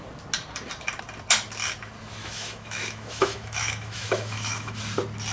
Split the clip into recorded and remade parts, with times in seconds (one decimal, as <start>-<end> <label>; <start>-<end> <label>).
0.0-2.2 recorded; 2.2-4.8 remade; 4.8-5.3 recorded